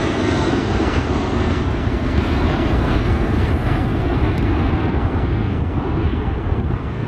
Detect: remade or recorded remade